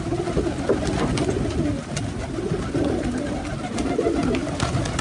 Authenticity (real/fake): real